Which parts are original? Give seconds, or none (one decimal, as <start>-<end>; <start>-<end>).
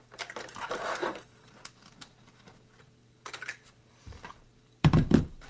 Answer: none